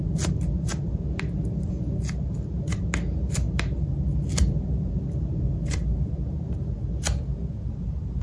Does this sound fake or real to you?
real